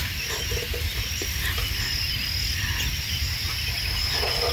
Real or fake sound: real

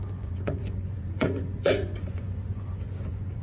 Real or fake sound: fake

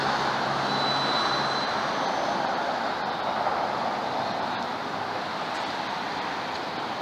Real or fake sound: real